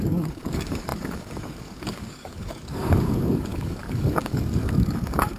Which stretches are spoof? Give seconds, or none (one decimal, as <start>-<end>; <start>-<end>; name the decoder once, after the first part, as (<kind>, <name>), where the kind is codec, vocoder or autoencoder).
0.0-5.4 (codec, DAC)